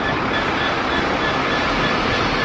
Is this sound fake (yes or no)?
no